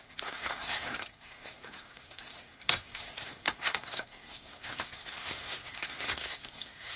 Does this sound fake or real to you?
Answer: fake